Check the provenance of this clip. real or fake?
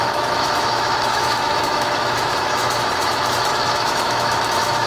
fake